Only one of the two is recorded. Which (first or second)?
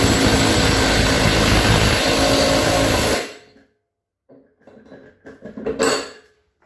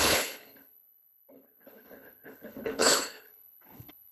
first